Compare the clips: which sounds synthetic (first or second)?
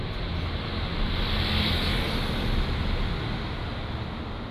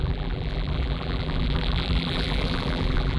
second